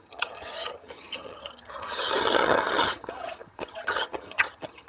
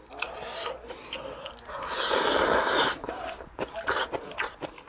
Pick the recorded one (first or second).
second